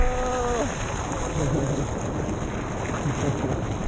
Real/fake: real